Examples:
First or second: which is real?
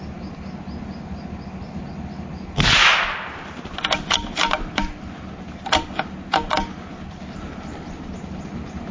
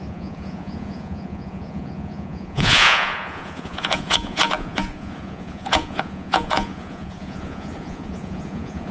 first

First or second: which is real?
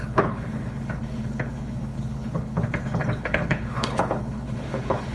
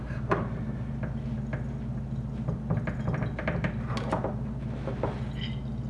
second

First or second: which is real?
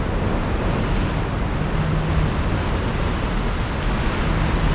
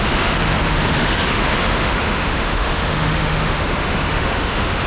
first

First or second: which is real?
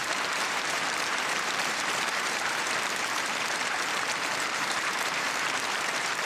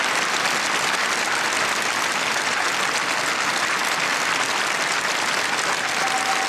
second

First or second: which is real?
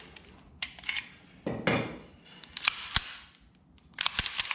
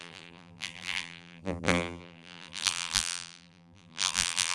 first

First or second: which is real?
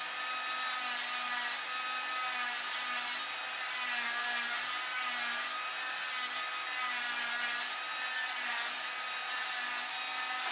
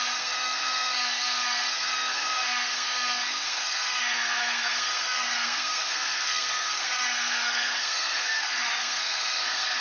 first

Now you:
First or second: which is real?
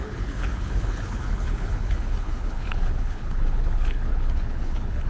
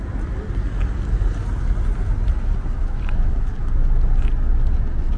second